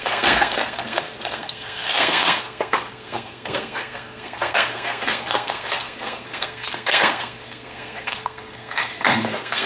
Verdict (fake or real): fake